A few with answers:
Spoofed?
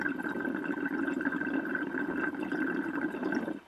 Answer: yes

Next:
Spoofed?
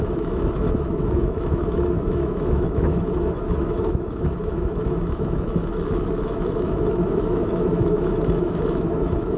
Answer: yes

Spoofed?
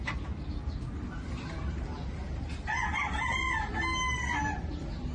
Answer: no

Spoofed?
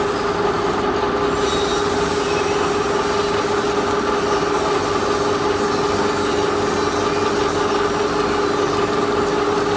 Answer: no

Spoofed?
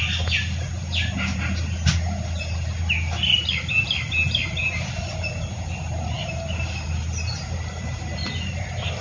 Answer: no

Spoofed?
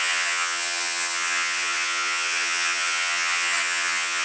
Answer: yes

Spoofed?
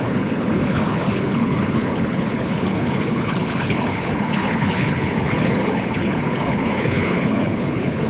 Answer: yes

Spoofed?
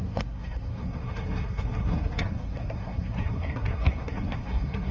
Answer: yes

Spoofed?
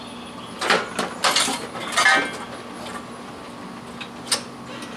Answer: no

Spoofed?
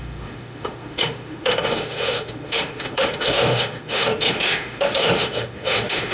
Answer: yes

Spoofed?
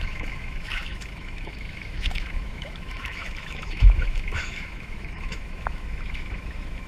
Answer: yes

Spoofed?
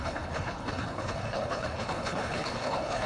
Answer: yes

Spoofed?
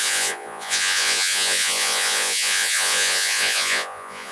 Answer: yes